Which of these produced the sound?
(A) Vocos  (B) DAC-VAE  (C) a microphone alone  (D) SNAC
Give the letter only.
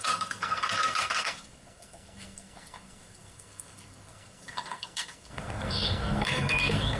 D